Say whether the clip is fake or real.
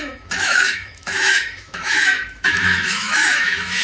fake